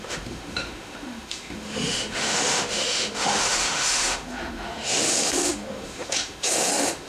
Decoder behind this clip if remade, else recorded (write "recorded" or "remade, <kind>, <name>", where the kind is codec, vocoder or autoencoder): remade, autoencoder, DAC-VAE